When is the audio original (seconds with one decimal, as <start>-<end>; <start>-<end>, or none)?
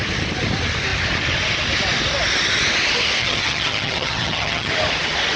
0.0-3.2; 4.7-5.4